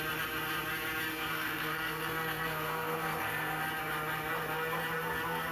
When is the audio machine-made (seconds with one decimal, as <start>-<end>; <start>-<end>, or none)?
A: 1.1-3.6